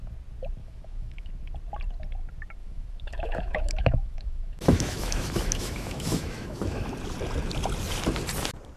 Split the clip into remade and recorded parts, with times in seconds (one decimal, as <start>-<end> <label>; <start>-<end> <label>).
0.0-0.6 recorded; 0.6-1.3 remade; 1.3-2.6 recorded; 2.6-6.9 remade; 6.9-8.8 recorded